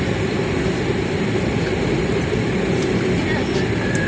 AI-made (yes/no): no